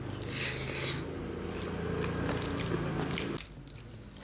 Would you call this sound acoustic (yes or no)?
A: yes